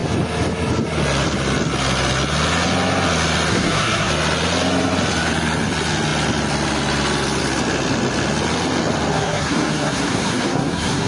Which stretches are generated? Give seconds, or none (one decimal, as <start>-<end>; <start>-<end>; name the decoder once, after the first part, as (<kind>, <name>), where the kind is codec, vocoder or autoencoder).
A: 3.5-4.1 (codec, SNAC); 9.1-11.1